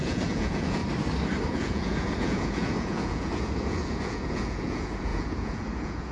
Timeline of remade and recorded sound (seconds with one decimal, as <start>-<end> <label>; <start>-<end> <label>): 0.0-0.8 remade; 0.8-1.5 recorded; 1.5-6.1 remade